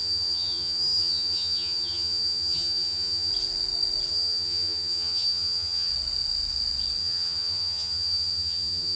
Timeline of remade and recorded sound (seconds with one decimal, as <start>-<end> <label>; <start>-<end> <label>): 0.0-3.3 remade; 3.3-4.1 recorded; 4.1-5.9 remade; 5.9-7.0 recorded; 7.0-9.0 remade